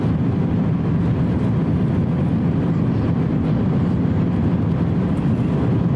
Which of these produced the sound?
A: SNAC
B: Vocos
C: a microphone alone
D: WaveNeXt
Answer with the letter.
C